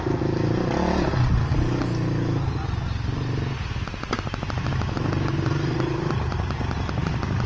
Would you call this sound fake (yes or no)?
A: no